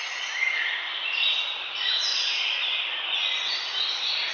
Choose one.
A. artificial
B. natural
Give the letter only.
B